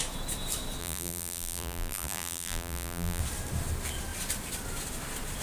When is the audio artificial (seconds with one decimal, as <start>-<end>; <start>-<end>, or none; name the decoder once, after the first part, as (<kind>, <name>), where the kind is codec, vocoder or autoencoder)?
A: 0.8-3.2 (vocoder, BigVGAN v2)